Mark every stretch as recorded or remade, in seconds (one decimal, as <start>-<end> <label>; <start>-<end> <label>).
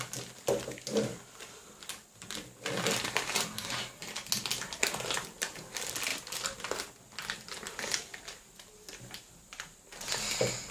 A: 0.0-10.7 recorded